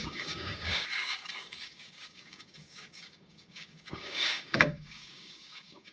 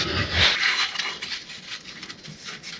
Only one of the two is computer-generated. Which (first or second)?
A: first